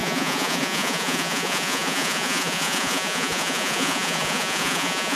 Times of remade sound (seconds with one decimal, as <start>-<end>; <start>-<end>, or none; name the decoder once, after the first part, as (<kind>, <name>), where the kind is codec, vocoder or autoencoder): 0.0-5.2 (vocoder, Vocos)